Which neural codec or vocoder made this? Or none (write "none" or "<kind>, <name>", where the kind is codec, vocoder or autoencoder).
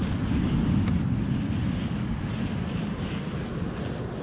none